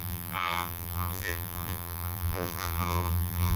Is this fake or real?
fake